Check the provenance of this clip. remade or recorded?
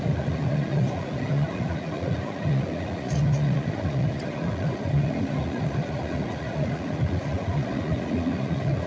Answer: remade